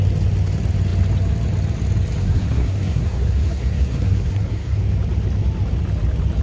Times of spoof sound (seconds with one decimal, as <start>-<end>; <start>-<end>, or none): 2.2-4.8